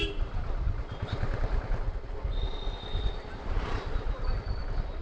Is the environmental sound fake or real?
real